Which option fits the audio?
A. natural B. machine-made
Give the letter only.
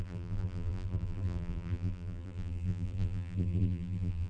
B